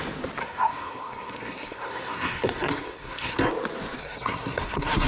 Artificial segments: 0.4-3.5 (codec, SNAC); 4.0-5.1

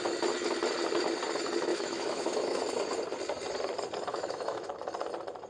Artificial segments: 1.7-2.6 (autoencoder, DAC-VAE); 4.1-4.7

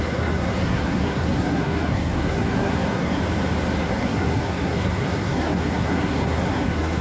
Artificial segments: 0.0-3.2 (codec, SNAC); 3.8-7.0

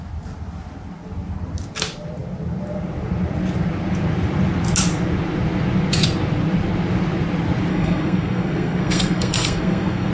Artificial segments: 7.7-10.1 (codec, SNAC)

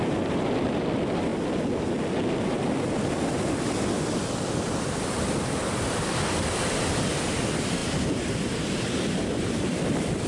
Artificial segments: 0.0-1.3 (vocoder, BigVGAN v2); 3.4-10.3

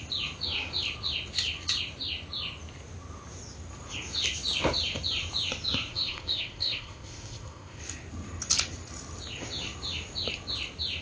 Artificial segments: 5.9-7.8 (codec, ZipCodec)